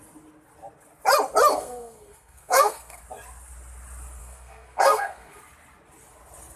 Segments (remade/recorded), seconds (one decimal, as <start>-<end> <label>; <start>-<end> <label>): 0.0-1.5 recorded; 1.5-3.0 remade; 3.0-4.2 recorded; 4.2-5.4 remade; 5.4-6.6 recorded